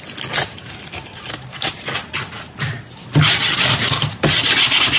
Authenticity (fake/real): real